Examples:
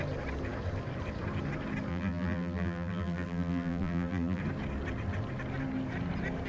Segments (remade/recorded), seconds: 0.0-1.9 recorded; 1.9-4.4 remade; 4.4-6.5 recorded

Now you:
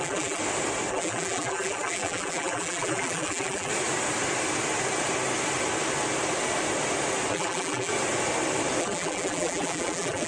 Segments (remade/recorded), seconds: 0.0-0.4 remade; 0.4-0.9 recorded; 0.9-3.7 remade; 3.7-7.3 recorded; 7.3-7.9 remade; 7.9-8.8 recorded; 8.8-10.3 remade